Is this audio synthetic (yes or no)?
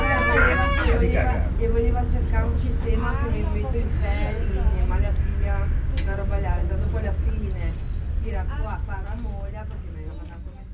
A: no